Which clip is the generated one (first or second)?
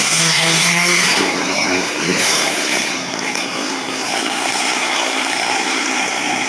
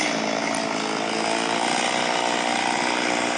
first